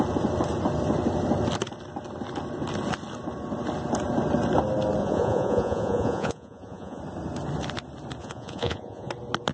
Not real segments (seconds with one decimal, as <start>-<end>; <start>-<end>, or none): 5.0-7.0; 8.2-9.1